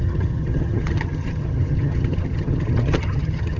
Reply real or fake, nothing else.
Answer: fake